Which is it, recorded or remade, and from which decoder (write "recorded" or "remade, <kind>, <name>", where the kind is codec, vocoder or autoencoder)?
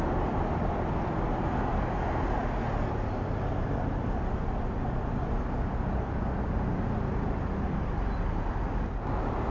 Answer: recorded